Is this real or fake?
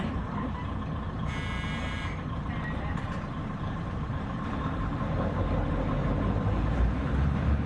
fake